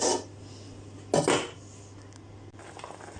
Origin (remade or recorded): recorded